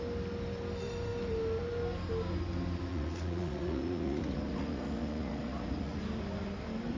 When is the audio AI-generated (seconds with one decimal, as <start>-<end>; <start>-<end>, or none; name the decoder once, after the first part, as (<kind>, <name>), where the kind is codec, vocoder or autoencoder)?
2.9-6.0 (vocoder, Vocos)